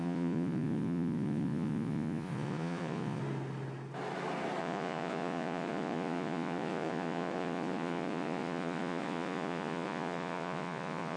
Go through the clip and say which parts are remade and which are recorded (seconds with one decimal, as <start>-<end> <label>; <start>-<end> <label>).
0.0-3.2 remade; 3.2-4.6 recorded; 4.6-11.2 remade